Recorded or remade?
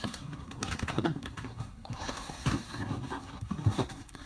remade